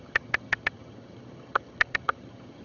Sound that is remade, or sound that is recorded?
remade